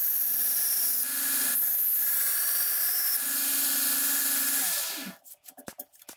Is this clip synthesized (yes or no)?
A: no